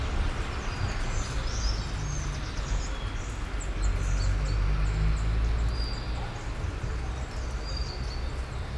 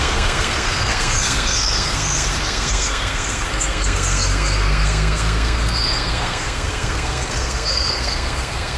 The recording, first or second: first